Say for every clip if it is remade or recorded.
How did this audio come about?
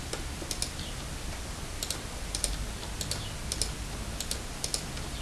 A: recorded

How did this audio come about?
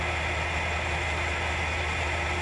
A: recorded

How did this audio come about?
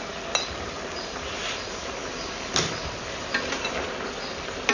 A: recorded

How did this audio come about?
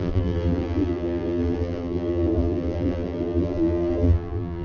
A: remade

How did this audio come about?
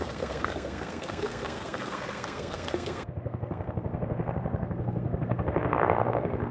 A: remade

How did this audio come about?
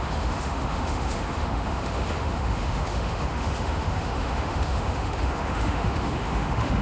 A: remade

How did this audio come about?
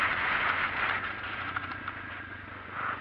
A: remade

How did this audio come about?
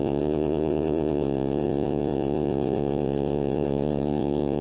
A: remade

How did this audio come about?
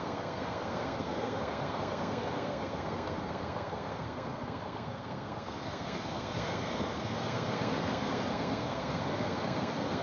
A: remade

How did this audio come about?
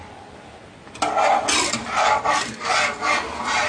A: recorded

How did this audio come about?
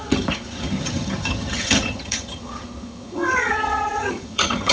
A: remade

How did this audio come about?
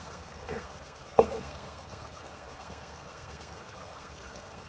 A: remade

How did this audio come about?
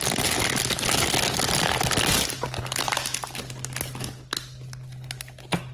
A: recorded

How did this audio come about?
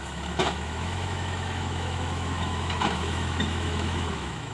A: remade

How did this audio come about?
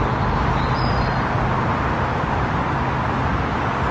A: recorded